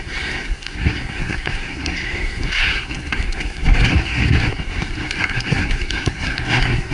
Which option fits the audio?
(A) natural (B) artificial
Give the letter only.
B